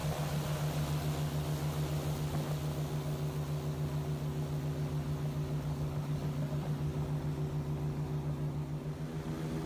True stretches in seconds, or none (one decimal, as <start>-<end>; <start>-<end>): 0.0-9.7

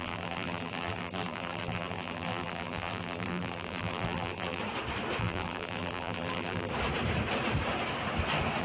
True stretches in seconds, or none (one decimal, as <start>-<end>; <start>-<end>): 4.6-5.2; 6.7-8.6

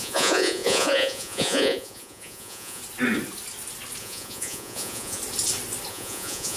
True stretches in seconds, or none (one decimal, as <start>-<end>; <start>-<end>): 2.8-4.0; 5.2-5.9

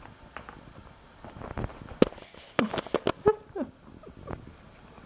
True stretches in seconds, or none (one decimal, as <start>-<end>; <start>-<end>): 0.0-5.1

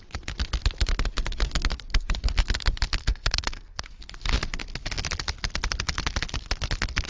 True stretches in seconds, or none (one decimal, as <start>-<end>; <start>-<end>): 0.0-3.0; 4.0-7.1